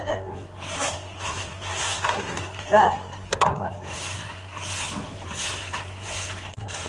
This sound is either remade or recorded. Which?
remade